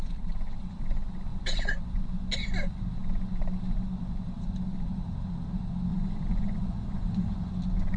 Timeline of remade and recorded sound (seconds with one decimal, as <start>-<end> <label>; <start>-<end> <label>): 0.0-5.9 recorded; 5.9-7.5 remade; 7.5-8.0 recorded